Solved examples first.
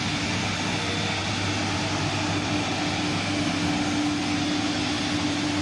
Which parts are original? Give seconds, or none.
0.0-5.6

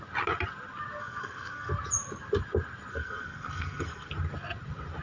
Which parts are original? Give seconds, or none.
0.0-1.0; 1.7-2.9; 4.1-5.0

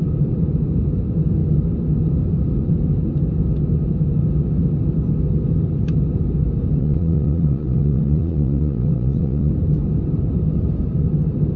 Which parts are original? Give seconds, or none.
0.0-6.8; 9.5-11.6

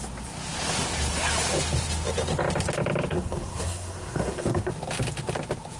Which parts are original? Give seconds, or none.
0.0-3.1; 4.7-5.8

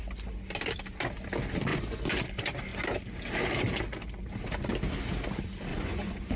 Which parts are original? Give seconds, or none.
0.0-1.7; 2.2-5.7

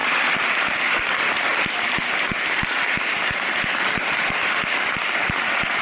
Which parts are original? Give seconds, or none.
0.0-0.7; 1.5-5.0